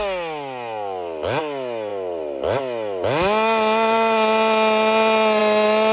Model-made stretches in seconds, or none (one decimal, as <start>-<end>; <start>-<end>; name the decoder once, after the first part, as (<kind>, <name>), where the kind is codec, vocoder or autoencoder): none